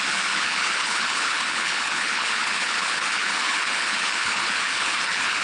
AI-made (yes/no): yes